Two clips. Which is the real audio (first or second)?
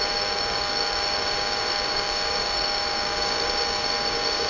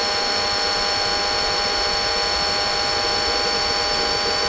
second